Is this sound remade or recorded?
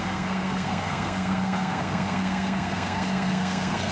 remade